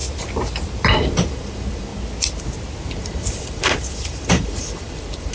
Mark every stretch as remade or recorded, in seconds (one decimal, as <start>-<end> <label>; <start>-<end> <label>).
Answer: 0.0-1.3 recorded; 1.3-1.9 remade; 1.9-3.0 recorded; 3.0-5.3 remade